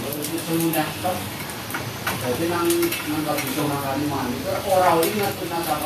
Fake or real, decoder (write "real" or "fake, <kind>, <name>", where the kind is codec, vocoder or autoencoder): real